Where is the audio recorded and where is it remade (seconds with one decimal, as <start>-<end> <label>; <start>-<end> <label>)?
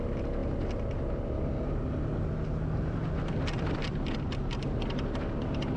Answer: 0.0-5.8 recorded